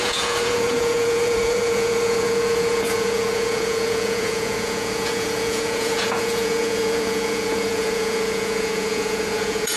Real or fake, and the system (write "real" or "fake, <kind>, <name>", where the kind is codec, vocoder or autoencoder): fake, vocoder, Vocos